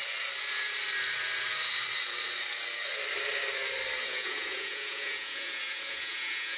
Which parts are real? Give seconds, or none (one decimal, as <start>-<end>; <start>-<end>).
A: 0.0-4.0